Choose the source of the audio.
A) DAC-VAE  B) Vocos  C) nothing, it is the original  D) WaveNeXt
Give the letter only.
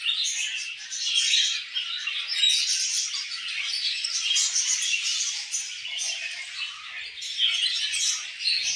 C